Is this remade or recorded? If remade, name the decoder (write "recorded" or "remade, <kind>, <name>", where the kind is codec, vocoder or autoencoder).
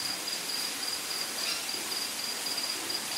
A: recorded